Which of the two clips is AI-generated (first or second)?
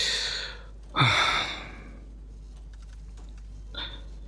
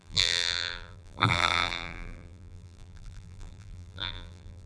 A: second